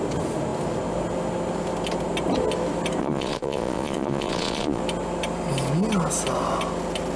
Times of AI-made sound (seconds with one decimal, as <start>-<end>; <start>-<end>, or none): 3.0-4.8